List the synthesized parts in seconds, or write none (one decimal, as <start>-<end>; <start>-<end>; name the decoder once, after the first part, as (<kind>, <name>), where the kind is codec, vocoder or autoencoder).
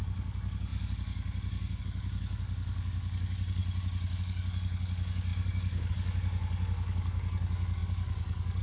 0.0-3.6 (codec, DAC); 4.2-8.6